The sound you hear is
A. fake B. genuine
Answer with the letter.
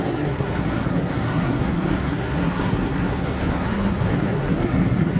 A